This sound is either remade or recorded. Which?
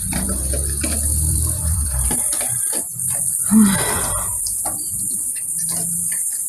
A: remade